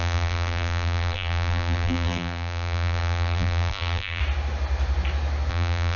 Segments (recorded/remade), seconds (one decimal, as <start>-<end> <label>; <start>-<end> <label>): 0.0-4.2 remade; 4.2-5.5 recorded; 5.5-6.0 remade